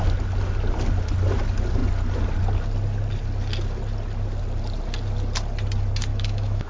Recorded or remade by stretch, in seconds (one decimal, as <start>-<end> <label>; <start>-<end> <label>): 0.0-6.1 recorded; 6.1-6.7 remade